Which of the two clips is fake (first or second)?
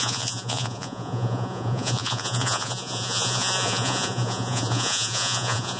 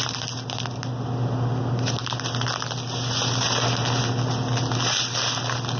first